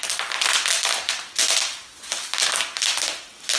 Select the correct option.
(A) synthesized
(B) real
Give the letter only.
B